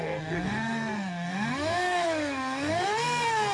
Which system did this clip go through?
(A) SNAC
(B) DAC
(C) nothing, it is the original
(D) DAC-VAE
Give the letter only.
A